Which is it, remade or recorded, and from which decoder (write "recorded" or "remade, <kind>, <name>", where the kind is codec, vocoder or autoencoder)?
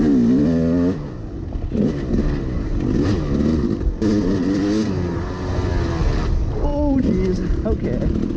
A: recorded